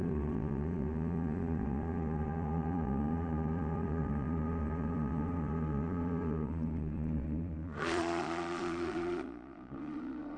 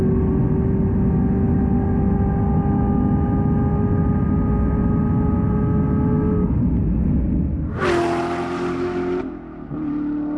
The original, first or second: second